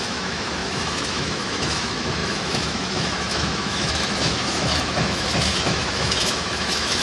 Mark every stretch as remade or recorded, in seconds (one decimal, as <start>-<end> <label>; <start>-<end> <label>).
0.0-7.0 remade